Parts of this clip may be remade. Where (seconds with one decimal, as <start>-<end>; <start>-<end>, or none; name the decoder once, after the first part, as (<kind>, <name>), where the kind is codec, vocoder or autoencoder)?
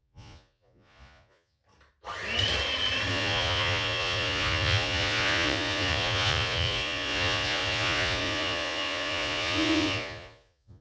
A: 0.0-1.6 (vocoder, Vocos); 3.1-10.8